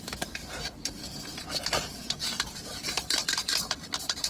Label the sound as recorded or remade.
remade